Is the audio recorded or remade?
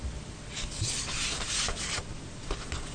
recorded